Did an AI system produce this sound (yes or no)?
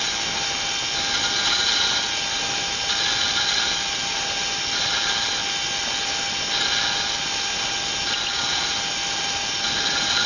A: no